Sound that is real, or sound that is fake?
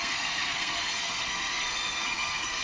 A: fake